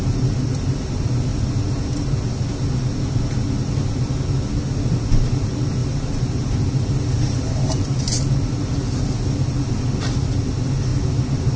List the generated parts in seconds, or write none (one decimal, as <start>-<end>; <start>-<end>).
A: 5.8-8.0